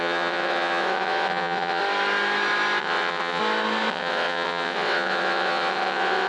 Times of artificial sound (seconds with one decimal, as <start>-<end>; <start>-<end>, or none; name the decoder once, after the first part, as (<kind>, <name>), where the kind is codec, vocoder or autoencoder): 0.0-1.8 (vocoder, WaveNeXt); 2.8-3.4; 3.9-6.3